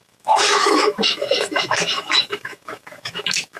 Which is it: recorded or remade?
remade